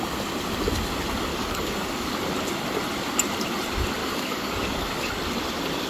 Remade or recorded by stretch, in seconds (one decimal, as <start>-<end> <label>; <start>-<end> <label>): 0.0-1.3 recorded; 1.3-2.1 remade; 2.1-4.0 recorded; 4.0-5.1 remade; 5.1-5.9 recorded